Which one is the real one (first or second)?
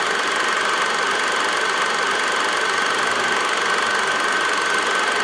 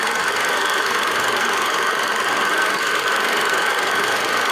first